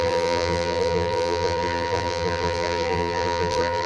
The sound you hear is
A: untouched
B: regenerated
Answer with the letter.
B